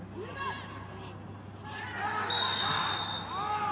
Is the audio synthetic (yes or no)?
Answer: no